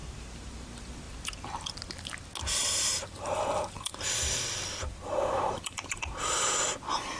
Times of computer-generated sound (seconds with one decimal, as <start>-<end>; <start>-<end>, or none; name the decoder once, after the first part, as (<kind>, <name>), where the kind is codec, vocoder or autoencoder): 0.0-1.3 (vocoder, BigVGAN v2); 2.6-7.2